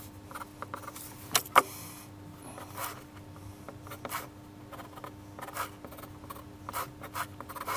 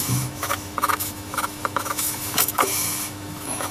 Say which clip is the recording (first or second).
first